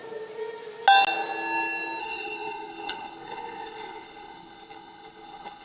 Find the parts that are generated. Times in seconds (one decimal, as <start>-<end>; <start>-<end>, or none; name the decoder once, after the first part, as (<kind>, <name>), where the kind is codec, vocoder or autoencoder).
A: 2.0-5.6 (codec, HILCodec)